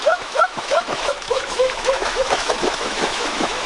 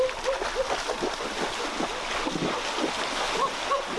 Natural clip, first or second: second